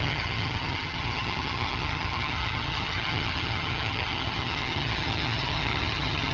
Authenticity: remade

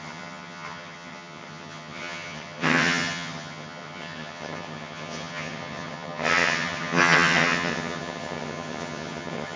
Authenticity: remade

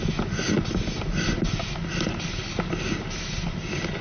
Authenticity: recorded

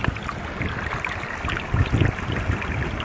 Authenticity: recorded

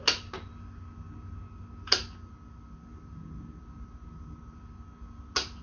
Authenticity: recorded